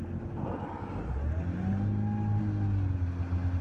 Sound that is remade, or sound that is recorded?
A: recorded